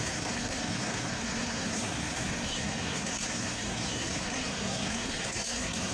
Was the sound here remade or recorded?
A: remade